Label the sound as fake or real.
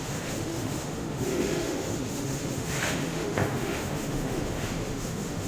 fake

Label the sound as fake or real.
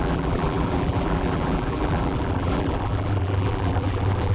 fake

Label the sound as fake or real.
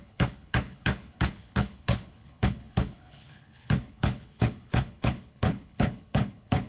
fake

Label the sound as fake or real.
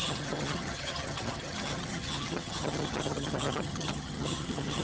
fake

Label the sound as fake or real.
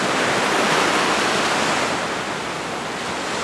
real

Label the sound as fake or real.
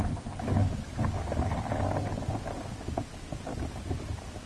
real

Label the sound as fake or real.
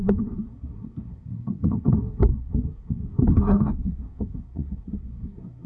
fake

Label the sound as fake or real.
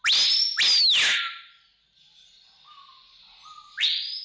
real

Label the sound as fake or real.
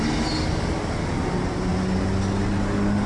real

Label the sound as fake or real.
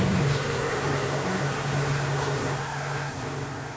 fake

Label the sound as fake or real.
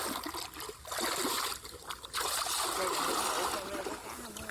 real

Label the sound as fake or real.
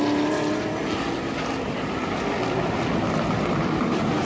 real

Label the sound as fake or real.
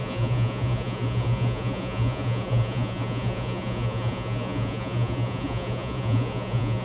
fake